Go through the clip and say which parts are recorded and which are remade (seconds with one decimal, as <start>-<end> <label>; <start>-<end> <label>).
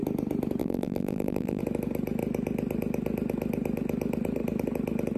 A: 0.0-0.6 recorded; 0.6-1.6 remade; 1.6-5.2 recorded